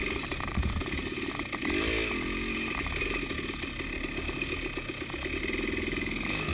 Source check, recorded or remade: recorded